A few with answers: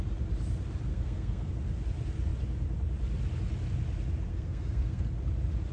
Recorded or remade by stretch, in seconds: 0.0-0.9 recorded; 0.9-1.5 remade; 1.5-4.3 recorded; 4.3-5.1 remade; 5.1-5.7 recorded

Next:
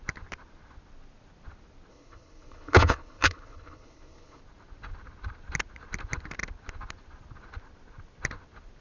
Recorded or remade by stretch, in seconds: 0.0-1.9 recorded; 1.9-4.4 remade; 4.4-8.8 recorded

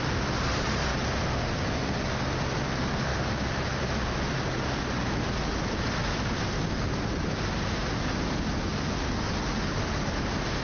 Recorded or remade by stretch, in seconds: 0.0-10.6 recorded

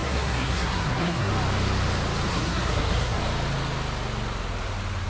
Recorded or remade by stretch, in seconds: 0.0-1.3 remade; 1.3-2.3 recorded; 2.3-3.2 remade; 3.2-5.1 recorded

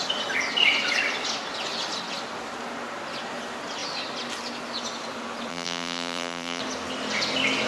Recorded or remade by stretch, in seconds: 0.0-5.5 recorded; 5.5-6.6 remade; 6.6-7.7 recorded

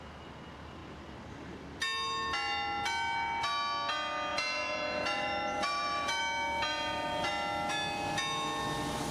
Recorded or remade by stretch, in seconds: 0.0-4.3 recorded; 4.3-6.2 remade; 6.2-6.7 recorded; 6.7-7.3 remade; 7.3-9.1 recorded